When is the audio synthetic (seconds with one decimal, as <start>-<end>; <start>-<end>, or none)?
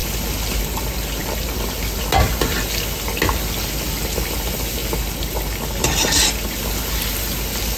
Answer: none